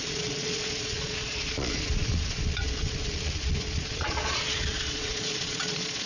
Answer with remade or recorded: remade